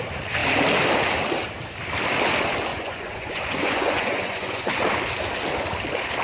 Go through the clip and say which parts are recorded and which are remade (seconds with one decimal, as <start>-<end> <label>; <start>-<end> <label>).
0.0-2.7 recorded; 2.7-4.8 remade; 4.8-6.2 recorded